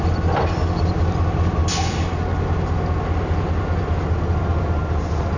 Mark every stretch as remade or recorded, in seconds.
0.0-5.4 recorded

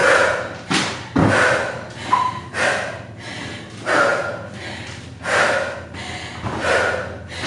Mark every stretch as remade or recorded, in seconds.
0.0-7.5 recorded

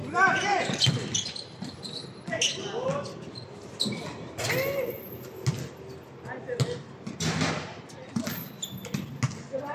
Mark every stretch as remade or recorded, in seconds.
0.0-9.7 recorded